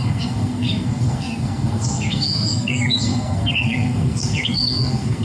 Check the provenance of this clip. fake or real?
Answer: fake